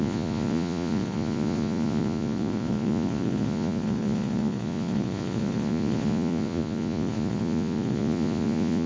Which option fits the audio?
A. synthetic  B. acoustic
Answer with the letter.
A